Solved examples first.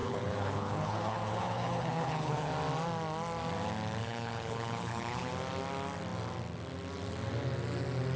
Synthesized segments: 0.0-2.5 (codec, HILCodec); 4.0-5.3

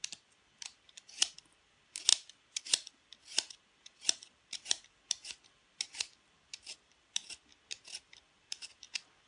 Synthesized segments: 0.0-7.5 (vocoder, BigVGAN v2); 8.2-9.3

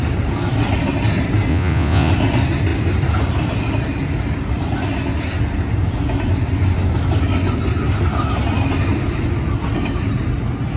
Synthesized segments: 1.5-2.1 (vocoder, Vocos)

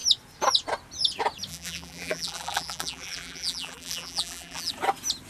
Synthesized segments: 1.5-4.7 (vocoder, BigVGAN v2)